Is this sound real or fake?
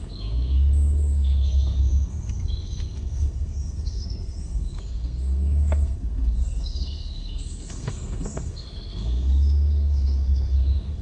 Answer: fake